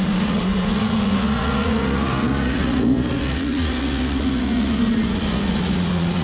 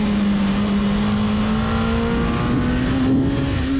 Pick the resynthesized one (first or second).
first